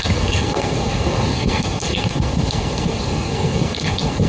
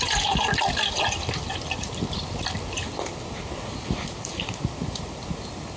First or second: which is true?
second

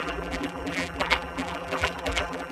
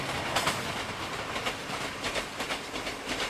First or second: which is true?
second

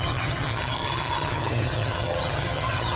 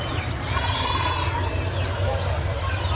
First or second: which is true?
second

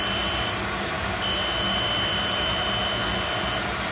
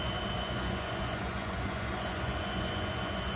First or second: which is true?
first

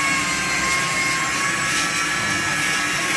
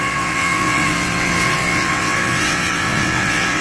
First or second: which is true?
first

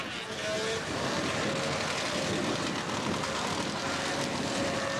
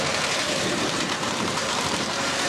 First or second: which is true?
first